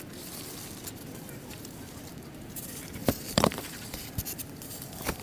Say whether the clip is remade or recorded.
remade